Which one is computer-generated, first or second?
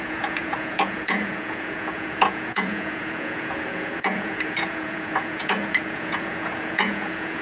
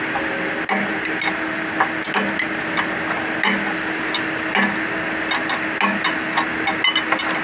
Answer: first